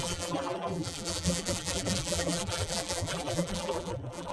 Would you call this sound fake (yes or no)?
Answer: yes